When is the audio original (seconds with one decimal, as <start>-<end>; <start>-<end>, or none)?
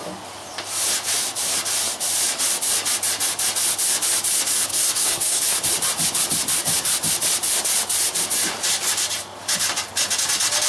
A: 0.0-4.7; 5.4-10.7